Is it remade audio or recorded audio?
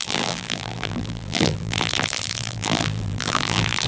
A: remade